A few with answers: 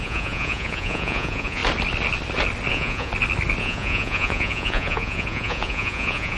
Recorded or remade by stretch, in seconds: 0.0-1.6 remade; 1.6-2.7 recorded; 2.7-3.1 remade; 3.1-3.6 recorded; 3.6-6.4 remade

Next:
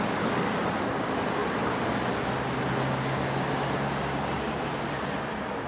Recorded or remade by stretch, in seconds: 0.0-5.7 recorded